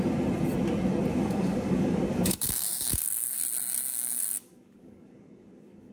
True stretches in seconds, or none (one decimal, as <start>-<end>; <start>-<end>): 0.0-1.1; 3.4-3.9

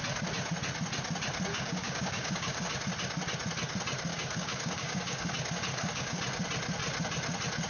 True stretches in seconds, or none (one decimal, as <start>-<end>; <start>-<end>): 0.0-1.5; 2.7-4.1; 5.3-5.7; 6.2-7.7

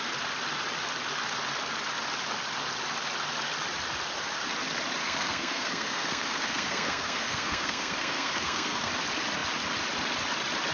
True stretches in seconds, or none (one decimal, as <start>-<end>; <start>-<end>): 0.0-5.0; 8.9-10.7

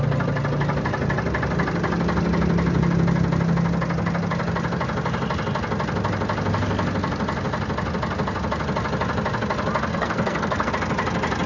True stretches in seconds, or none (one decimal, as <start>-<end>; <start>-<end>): 0.0-9.9; 10.7-11.5